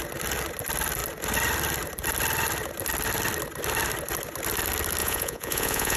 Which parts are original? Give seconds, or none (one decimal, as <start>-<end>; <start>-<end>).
0.0-5.0